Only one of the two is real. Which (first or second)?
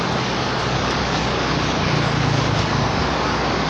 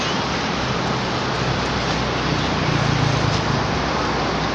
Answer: second